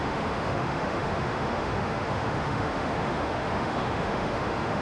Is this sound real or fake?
fake